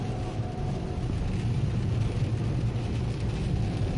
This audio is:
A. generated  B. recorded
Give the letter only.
B